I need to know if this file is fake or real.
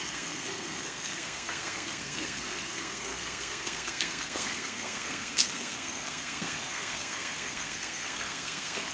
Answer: fake